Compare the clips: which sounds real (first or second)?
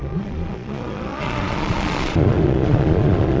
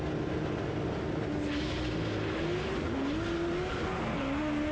second